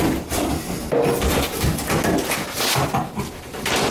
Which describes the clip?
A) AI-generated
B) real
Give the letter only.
B